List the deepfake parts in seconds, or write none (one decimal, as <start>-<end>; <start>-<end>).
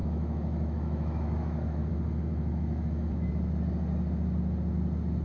0.0-1.9; 2.3-3.3